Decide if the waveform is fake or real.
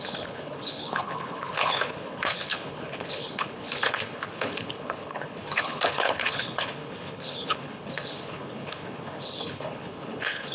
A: fake